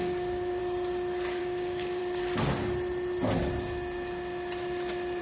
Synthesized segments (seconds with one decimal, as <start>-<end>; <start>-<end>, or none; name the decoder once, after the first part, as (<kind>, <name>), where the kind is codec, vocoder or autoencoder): 0.0-0.6 (codec, DAC); 1.4-2.0